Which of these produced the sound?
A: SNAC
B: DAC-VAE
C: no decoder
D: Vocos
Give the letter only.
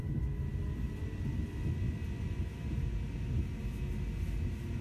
C